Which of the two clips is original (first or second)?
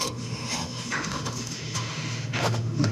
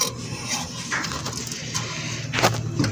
second